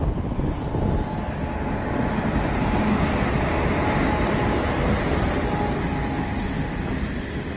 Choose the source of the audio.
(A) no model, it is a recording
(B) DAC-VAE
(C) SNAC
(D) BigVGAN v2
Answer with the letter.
A